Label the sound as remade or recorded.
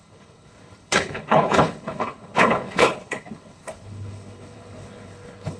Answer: remade